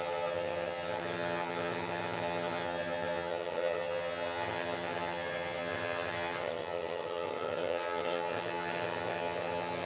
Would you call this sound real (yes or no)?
no